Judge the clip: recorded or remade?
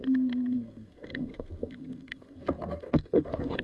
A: remade